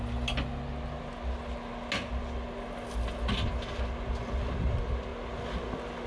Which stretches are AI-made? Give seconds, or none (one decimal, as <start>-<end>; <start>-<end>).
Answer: none